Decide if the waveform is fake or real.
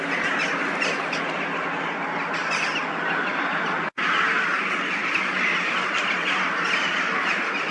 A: real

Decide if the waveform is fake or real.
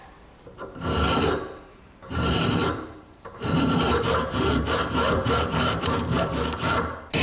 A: fake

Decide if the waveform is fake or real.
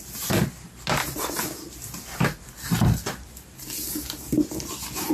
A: real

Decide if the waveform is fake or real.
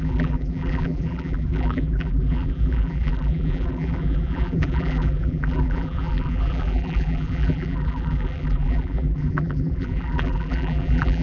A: fake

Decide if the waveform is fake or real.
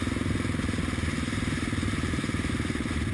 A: real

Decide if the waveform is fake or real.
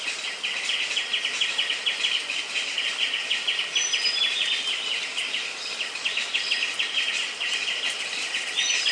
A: real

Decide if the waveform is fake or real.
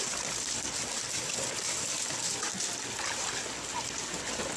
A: real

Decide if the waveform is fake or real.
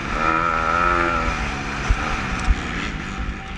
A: real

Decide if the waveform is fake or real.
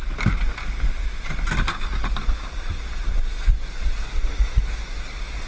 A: real